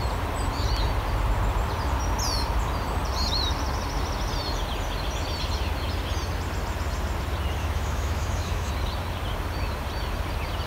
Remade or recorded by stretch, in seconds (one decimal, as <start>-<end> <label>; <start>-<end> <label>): 0.0-7.6 recorded; 7.6-8.7 remade; 8.7-10.7 recorded